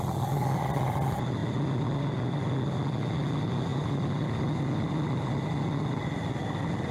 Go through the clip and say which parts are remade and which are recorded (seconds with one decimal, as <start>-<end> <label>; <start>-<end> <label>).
0.0-3.7 recorded; 3.7-4.9 remade; 4.9-6.9 recorded